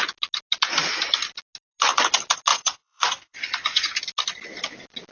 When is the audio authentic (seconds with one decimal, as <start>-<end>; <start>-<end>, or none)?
0.0-2.5; 3.9-5.1